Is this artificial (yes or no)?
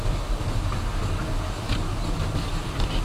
no